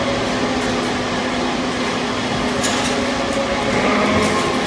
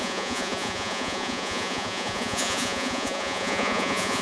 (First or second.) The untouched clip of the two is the first